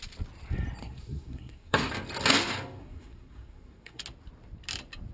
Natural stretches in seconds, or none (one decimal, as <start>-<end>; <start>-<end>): 0.0-0.8; 1.9-2.8; 4.0-5.1